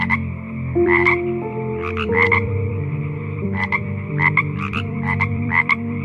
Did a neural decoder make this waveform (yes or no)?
yes